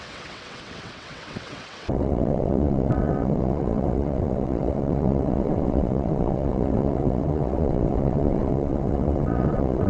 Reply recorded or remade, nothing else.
remade